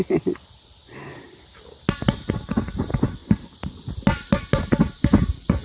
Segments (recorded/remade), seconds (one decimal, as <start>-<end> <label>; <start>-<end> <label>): 0.0-5.6 recorded